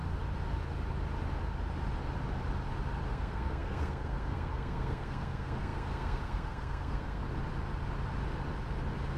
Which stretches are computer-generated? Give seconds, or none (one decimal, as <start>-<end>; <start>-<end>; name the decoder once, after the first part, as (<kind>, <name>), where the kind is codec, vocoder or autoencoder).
3.1-7.2 (codec, SNAC)